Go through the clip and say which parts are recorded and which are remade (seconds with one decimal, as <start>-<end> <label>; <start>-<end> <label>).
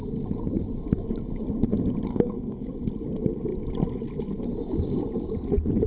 0.0-2.1 recorded; 2.1-2.7 remade; 2.7-5.9 recorded